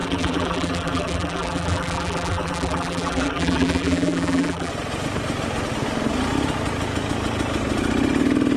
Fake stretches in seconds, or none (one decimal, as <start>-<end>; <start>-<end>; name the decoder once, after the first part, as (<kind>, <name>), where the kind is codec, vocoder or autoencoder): 0.0-4.7 (vocoder, BigVGAN v2)